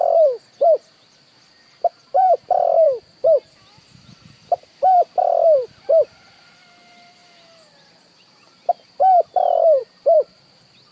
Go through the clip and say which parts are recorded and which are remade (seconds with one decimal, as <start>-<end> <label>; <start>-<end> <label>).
0.0-7.2 remade; 7.2-9.8 recorded; 9.8-10.9 remade